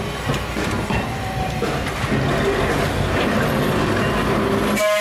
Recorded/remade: recorded